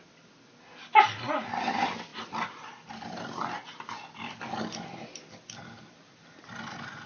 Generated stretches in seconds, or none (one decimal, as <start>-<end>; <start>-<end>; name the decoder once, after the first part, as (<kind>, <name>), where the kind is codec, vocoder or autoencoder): none